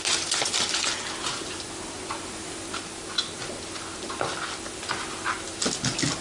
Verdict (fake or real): real